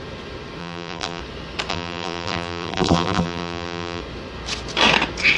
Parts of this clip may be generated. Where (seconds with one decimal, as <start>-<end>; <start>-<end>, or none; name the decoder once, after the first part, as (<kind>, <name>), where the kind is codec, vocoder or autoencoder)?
0.6-1.2 (vocoder, BigVGAN v2); 1.7-4.0